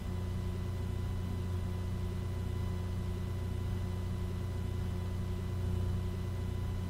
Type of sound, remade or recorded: recorded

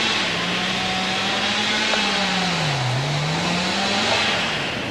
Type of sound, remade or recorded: recorded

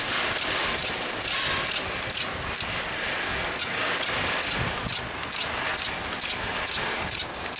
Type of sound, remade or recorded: recorded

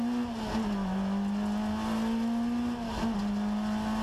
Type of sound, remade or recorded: recorded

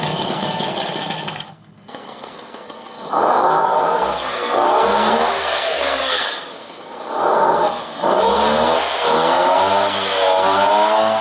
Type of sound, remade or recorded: remade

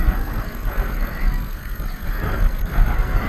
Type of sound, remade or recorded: remade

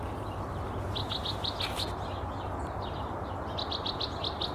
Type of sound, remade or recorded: recorded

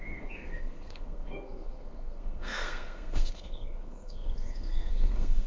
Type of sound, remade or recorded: remade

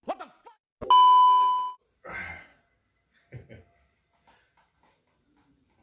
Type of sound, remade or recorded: recorded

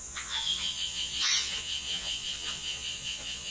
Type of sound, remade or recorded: remade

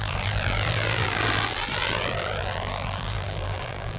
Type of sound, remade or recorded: remade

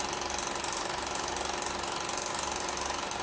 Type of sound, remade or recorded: recorded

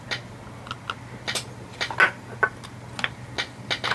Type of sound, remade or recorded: recorded